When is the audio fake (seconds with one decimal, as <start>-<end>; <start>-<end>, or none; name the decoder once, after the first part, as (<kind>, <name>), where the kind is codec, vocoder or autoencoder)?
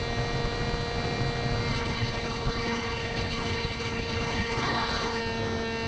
1.7-5.2 (codec, HILCodec)